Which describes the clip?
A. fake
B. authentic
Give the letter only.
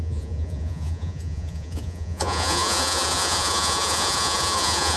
A